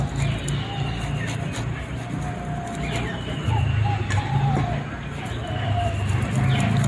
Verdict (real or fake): real